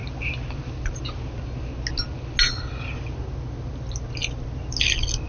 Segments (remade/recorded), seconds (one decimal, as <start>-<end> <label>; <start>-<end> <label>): 0.0-5.3 recorded